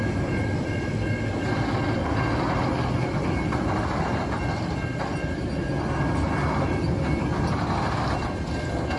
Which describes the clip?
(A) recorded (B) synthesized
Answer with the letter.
A